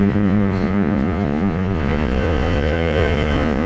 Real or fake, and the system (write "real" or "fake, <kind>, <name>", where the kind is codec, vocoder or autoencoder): fake, vocoder, Vocos